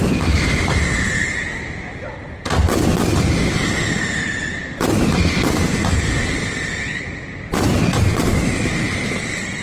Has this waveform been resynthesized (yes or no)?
no